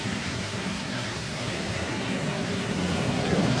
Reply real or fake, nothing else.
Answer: fake